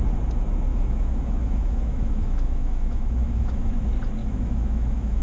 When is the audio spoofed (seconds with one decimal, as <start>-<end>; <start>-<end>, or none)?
0.7-3.7; 4.2-5.2